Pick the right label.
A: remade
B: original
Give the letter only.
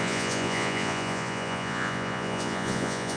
A